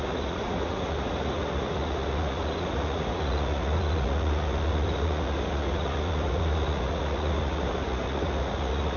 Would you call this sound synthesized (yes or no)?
yes